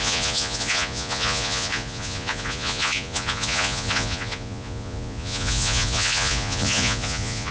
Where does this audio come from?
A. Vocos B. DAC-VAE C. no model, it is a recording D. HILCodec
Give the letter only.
A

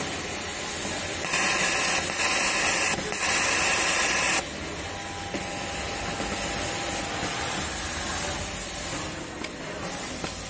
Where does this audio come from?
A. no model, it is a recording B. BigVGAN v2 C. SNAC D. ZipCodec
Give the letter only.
A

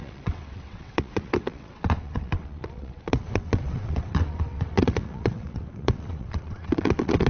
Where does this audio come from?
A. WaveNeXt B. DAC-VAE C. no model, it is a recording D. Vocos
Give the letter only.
A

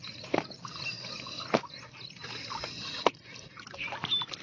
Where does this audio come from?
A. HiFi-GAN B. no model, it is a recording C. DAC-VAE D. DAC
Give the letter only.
B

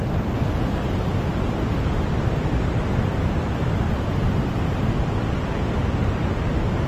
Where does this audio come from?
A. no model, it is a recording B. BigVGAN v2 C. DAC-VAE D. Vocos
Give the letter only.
A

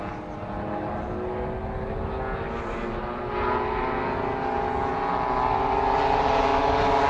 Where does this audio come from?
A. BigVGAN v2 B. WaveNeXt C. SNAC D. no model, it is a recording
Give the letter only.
D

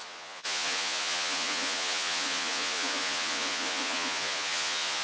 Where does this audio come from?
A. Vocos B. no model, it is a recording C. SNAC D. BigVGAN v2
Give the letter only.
A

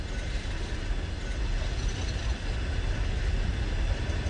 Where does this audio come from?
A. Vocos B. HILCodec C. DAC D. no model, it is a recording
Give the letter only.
D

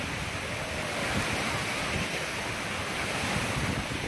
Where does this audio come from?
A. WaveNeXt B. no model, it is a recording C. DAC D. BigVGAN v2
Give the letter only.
D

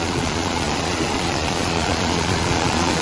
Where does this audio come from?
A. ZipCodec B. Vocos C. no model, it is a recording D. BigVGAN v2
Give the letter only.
B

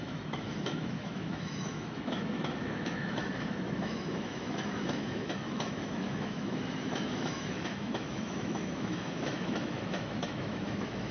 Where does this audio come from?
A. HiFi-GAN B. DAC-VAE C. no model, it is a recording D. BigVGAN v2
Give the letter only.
B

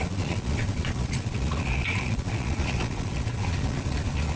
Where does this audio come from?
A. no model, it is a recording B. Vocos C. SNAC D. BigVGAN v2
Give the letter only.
B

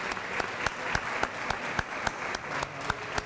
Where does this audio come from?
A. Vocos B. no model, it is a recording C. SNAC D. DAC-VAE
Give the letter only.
B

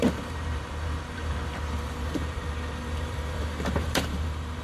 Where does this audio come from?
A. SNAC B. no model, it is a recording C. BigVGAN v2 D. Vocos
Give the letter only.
C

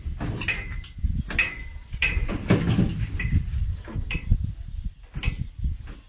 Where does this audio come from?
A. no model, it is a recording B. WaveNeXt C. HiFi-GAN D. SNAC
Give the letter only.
A